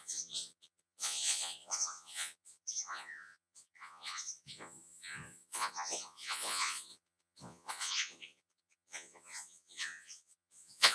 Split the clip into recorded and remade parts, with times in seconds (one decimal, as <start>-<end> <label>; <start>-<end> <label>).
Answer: 0.0-10.9 remade